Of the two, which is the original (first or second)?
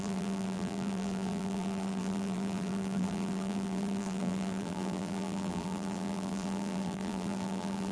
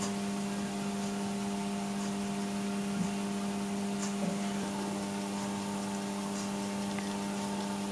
second